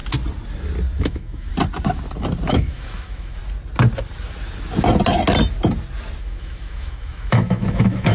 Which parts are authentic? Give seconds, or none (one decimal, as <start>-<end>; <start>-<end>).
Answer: 0.0-1.0; 1.5-2.5; 3.4-6.2